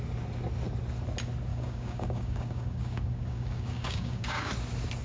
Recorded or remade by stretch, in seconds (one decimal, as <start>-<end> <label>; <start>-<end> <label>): 0.0-1.5 recorded; 1.5-4.5 remade; 4.5-5.0 recorded